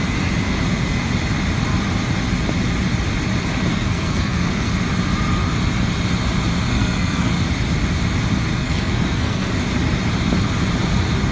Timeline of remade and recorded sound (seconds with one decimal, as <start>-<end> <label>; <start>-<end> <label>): 0.0-3.7 recorded; 3.7-4.7 remade; 4.7-6.7 recorded; 6.7-7.3 remade; 7.3-8.5 recorded; 8.5-9.5 remade; 9.5-11.3 recorded